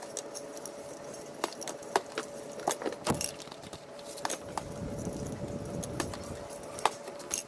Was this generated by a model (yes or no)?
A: no